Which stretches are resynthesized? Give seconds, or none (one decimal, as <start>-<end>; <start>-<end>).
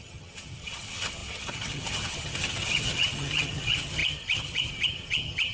0.0-5.5